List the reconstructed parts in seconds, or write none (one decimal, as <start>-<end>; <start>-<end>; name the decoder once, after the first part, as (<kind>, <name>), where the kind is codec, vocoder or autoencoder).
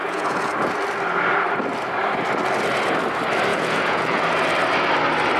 0.0-0.5 (vocoder, Vocos); 3.5-4.2